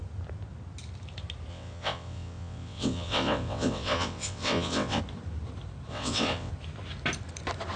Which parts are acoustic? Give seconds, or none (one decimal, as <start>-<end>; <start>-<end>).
0.0-1.5; 5.0-5.9; 6.5-7.8